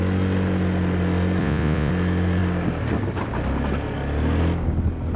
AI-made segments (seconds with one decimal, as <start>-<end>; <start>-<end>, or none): 1.4-1.9